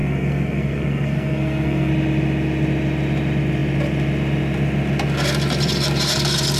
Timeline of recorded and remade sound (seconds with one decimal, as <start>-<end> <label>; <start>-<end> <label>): 0.0-1.9 remade; 1.9-6.6 recorded